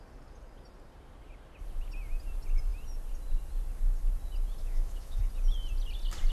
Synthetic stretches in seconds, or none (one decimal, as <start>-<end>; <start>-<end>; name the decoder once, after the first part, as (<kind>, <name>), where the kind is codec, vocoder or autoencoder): 4.6-5.2 (autoencoder, DAC-VAE)